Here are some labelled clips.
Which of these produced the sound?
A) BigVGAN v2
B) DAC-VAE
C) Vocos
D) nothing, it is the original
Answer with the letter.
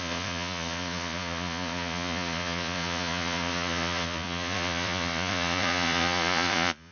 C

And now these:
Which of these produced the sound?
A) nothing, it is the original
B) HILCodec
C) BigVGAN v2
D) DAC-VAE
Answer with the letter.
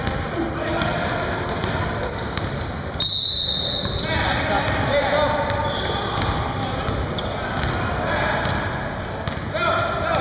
A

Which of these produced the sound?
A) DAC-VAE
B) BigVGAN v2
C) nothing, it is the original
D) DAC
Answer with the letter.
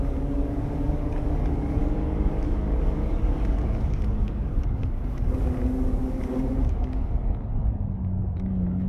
D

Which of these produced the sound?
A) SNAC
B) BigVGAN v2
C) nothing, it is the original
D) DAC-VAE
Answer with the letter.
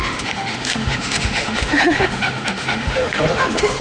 D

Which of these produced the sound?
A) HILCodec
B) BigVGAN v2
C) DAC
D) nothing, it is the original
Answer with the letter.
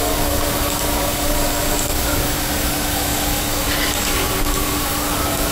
C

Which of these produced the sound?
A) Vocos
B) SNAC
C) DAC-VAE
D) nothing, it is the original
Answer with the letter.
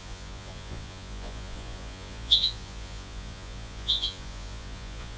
A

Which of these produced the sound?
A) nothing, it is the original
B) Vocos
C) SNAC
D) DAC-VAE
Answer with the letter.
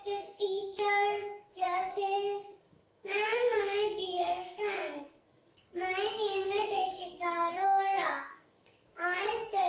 C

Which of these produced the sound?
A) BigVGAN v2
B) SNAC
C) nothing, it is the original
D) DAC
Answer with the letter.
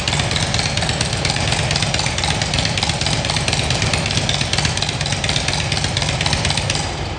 C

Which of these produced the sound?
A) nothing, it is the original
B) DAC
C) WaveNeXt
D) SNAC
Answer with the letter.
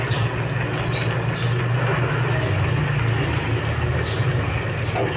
A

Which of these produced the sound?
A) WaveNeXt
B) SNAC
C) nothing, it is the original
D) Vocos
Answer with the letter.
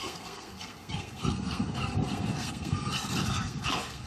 B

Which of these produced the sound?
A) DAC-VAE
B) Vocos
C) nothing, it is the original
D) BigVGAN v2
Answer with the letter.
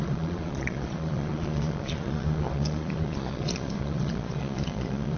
B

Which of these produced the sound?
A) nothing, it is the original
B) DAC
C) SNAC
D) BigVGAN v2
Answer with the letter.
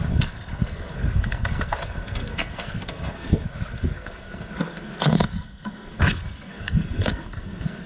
C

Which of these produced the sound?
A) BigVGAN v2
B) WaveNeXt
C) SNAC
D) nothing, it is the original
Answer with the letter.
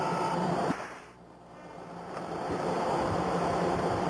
A